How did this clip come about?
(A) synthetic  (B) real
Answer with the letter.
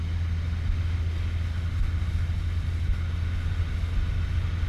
B